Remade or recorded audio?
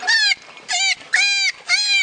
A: recorded